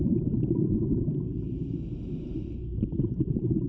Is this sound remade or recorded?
remade